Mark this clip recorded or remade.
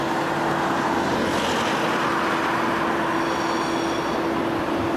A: recorded